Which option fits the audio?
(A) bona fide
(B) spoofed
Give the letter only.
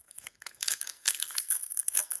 B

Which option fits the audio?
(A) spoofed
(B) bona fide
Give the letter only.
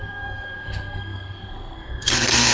A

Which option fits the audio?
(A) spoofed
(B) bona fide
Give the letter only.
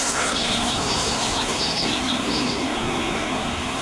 A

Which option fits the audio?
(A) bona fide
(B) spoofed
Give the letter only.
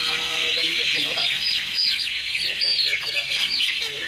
B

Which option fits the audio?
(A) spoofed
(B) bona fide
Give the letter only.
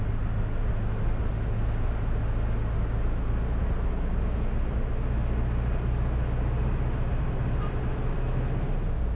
B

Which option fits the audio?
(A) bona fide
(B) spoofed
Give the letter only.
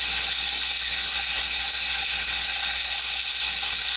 B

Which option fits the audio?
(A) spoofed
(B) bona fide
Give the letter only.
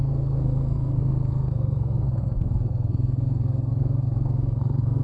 A